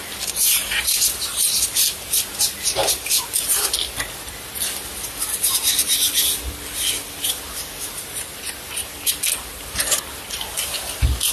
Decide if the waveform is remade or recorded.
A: recorded